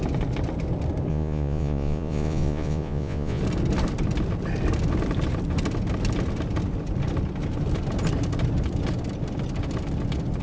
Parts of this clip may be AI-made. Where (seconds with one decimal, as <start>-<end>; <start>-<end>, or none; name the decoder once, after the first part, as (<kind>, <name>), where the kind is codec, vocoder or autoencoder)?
1.1-3.4 (vocoder, Vocos)